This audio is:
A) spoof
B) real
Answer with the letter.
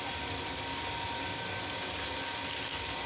B